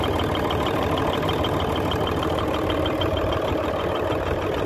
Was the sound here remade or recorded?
remade